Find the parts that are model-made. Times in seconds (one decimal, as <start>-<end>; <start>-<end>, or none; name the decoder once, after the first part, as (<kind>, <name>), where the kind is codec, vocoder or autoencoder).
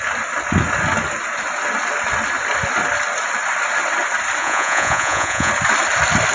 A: 4.4-5.5 (vocoder, Vocos)